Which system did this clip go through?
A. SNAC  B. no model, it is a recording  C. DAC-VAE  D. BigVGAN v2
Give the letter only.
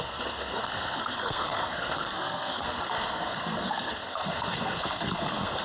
A